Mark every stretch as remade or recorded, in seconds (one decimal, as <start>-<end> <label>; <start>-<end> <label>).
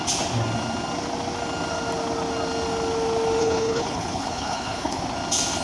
0.0-3.4 recorded; 3.4-5.0 remade; 5.0-5.6 recorded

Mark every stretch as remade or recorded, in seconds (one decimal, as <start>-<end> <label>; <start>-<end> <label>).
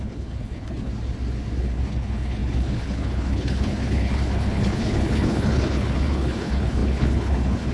0.0-0.9 remade; 0.9-1.6 recorded; 1.6-7.7 remade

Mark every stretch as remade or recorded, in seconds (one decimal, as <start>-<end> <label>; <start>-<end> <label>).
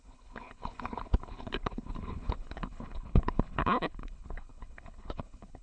0.0-5.6 remade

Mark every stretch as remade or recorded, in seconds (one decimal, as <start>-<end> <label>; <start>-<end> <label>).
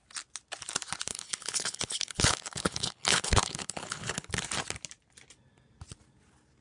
0.0-1.1 recorded; 1.1-4.4 remade; 4.4-6.6 recorded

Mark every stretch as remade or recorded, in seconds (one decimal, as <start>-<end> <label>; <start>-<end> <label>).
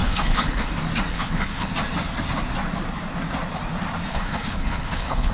0.0-0.7 remade; 0.7-1.1 recorded; 1.1-1.7 remade; 1.7-4.1 recorded; 4.1-5.3 remade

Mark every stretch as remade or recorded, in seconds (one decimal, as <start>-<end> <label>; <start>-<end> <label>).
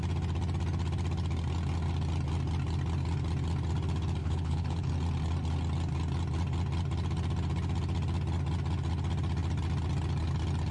0.0-4.2 recorded; 4.2-4.9 remade; 4.9-10.7 recorded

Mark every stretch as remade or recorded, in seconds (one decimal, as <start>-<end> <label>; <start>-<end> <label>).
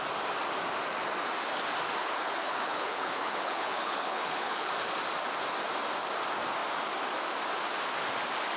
0.0-2.0 recorded; 2.0-4.7 remade; 4.7-8.6 recorded